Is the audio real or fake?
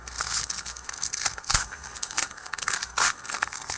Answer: fake